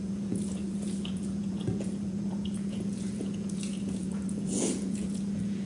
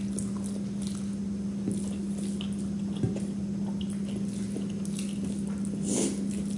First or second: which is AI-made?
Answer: first